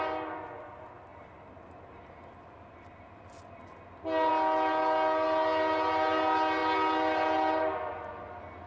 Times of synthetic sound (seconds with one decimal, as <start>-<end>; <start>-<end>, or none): none